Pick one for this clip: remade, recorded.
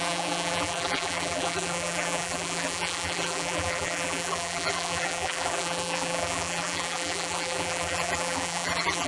remade